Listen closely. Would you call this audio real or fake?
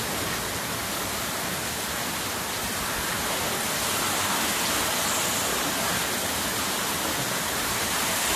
real